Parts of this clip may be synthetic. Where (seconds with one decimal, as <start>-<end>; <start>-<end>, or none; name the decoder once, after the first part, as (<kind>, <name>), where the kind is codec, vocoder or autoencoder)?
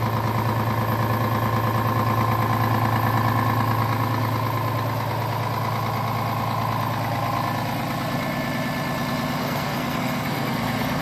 9.4-11.0 (codec, SNAC)